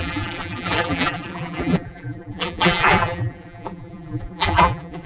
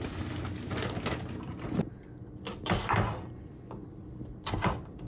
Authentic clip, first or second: second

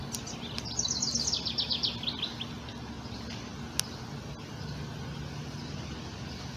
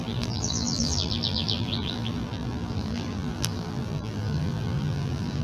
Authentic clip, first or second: first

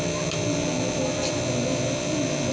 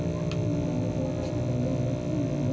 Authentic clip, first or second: second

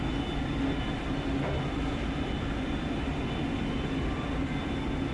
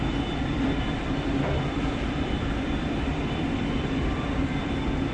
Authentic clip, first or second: first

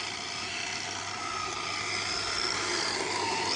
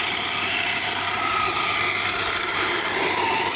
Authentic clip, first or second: first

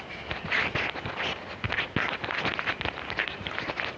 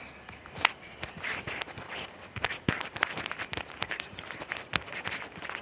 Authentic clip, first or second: first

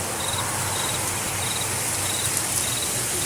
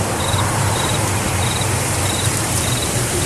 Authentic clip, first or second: first